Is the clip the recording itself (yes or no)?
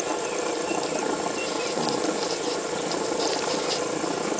no